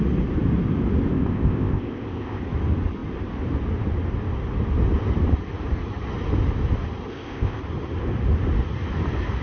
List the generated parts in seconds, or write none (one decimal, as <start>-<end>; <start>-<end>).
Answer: 1.1-2.4; 7.1-7.6

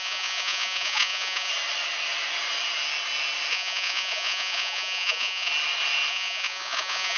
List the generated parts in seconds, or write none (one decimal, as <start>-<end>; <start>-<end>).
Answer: 0.0-1.5; 3.5-5.5; 6.1-7.2

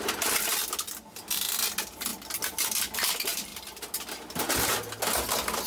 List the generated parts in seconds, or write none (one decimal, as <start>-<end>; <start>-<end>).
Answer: none

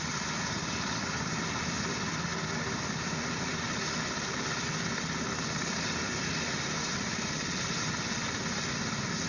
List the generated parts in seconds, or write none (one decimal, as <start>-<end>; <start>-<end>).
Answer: 6.9-7.9

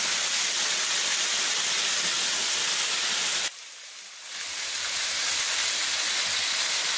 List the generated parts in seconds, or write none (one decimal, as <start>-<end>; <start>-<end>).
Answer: none